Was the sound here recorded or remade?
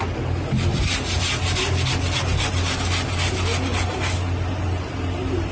recorded